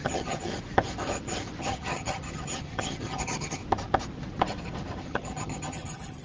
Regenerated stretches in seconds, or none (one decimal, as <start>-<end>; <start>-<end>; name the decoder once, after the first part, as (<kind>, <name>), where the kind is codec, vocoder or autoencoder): 0.0-0.5 (vocoder, HiFi-GAN); 1.6-3.6; 5.0-6.2